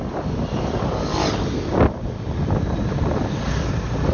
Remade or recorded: recorded